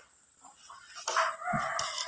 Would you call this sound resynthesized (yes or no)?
no